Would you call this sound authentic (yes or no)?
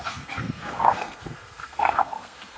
no